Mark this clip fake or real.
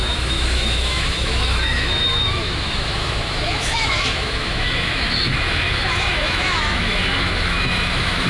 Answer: fake